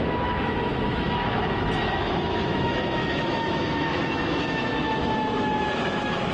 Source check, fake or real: fake